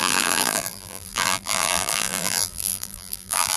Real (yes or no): no